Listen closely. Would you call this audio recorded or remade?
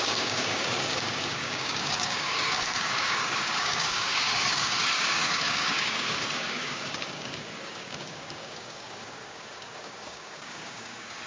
remade